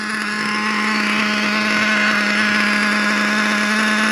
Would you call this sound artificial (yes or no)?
no